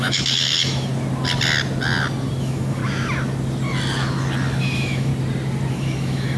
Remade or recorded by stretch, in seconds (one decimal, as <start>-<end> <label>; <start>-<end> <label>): 0.0-0.9 remade; 0.9-2.4 recorded; 2.4-2.8 remade; 2.8-4.6 recorded; 4.6-5.1 remade; 5.1-5.7 recorded; 5.7-6.4 remade